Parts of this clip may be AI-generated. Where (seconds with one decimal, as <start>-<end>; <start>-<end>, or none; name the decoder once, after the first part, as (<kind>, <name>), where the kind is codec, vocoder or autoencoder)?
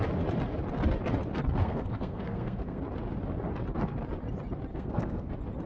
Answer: 1.6-2.8 (codec, SNAC); 4.7-5.3